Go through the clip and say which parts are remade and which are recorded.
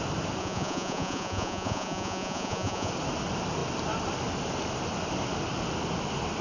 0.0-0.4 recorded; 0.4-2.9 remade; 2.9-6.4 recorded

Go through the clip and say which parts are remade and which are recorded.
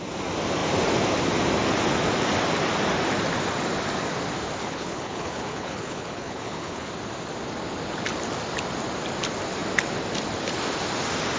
0.0-4.6 recorded; 4.6-6.9 remade; 6.9-11.4 recorded